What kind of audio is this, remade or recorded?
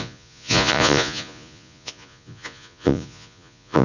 remade